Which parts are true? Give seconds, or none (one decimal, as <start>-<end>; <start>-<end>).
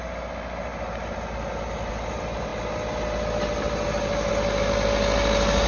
0.0-5.7